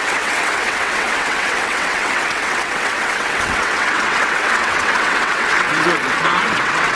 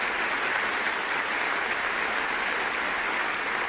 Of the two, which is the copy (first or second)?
first